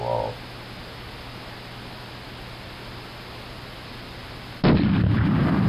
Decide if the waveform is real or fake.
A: real